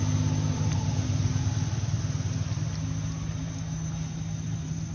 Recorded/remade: recorded